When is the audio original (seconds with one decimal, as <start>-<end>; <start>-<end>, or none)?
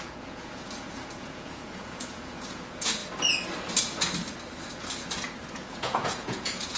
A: 3.0-5.5